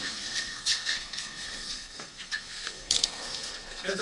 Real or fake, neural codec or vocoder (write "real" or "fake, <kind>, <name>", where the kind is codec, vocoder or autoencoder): fake, codec, SNAC